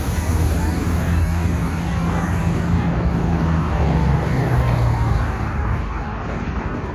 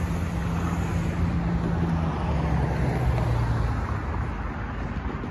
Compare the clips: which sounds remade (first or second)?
first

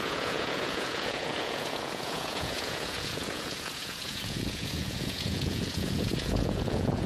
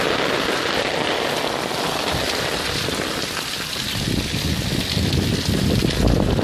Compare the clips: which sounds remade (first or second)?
first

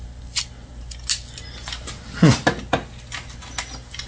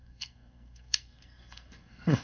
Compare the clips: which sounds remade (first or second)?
second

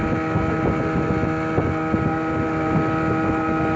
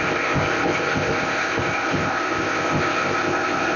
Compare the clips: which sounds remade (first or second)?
second